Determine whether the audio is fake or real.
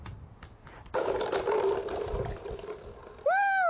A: real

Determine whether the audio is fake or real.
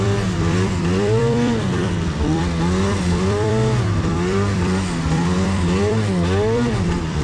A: fake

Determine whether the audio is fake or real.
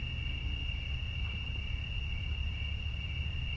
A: real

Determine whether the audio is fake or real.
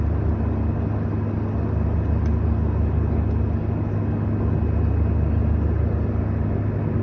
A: real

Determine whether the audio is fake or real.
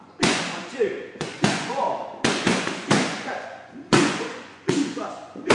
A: fake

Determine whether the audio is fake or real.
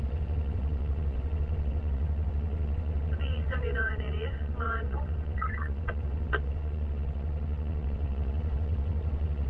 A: fake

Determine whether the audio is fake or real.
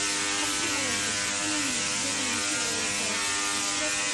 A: real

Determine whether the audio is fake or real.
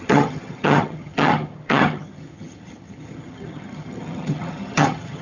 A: fake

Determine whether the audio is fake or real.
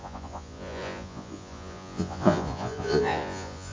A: fake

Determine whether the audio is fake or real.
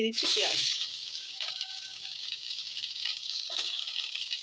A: fake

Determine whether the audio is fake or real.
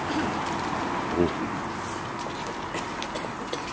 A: real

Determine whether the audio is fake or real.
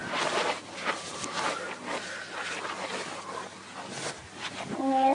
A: real